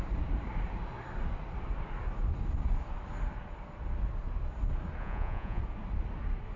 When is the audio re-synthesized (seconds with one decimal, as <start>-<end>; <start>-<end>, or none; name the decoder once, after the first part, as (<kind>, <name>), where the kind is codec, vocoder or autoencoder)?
5.0-5.6 (vocoder, Vocos)